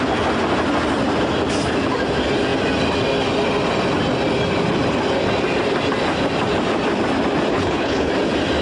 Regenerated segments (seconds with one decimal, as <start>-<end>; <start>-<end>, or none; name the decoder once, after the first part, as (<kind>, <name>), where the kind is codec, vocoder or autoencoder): 7.5-8.1 (codec, HILCodec)